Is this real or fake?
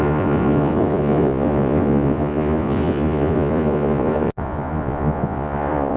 fake